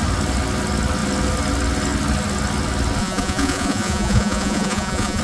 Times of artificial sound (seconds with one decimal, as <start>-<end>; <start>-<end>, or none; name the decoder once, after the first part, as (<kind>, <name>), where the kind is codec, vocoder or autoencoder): 3.0-5.2 (vocoder, Vocos)